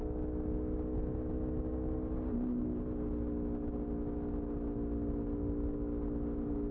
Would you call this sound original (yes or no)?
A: yes